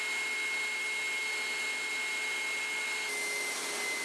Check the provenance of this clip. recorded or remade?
recorded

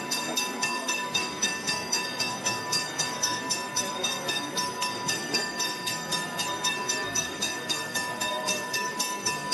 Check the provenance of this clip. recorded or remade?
remade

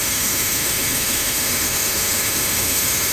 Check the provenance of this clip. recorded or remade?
remade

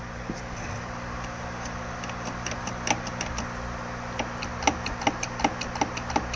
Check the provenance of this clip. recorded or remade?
recorded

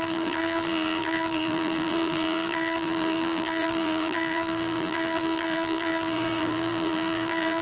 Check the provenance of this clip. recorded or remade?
remade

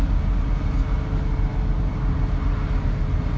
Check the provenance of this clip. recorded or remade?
recorded